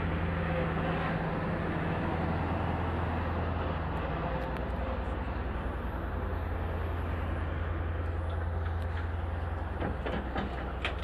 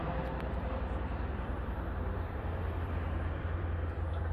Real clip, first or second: first